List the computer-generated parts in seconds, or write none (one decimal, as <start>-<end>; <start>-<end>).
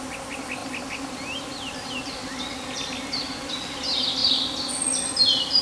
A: none